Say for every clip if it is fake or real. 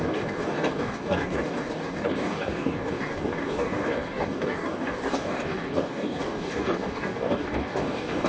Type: fake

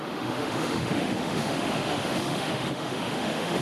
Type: fake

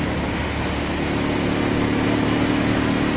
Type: real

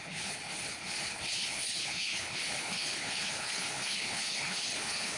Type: fake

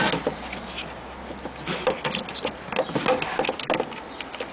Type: real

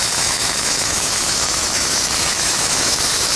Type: fake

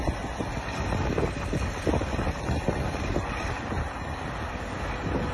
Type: real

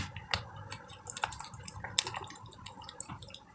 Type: real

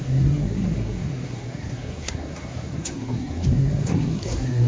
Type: fake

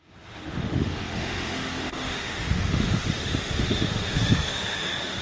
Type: fake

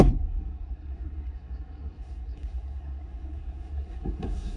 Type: fake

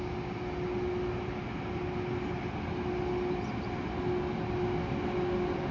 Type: real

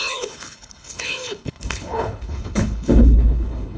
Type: fake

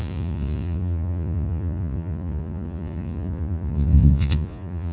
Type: fake